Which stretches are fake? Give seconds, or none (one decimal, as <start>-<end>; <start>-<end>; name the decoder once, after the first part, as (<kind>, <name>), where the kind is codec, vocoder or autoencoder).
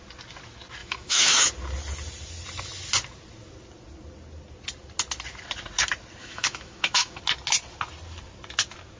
0.8-1.5 (autoencoder, DAC-VAE); 6.2-7.2